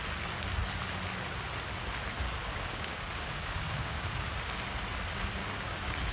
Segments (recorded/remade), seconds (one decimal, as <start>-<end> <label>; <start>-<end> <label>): 0.0-2.4 recorded; 2.4-4.3 remade; 4.3-5.4 recorded; 5.4-6.1 remade